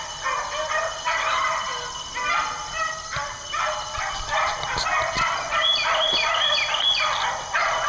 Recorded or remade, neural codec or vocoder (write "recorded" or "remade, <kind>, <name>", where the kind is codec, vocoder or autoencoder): recorded